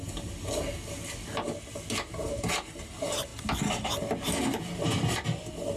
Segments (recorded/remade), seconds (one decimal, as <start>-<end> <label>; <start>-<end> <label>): 0.0-5.8 recorded